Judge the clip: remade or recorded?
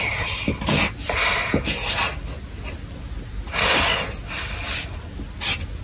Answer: recorded